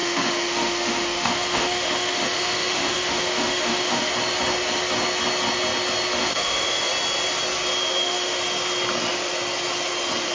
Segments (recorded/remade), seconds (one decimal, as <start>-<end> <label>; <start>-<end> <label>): 0.0-4.1 remade; 4.1-6.2 recorded; 6.2-6.9 remade; 6.9-7.8 recorded; 7.8-8.4 remade; 8.4-10.3 recorded